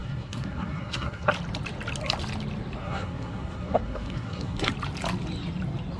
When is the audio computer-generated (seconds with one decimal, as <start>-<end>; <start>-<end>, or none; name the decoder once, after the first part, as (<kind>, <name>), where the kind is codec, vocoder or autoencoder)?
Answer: 0.0-1.3 (codec, SNAC); 2.8-4.7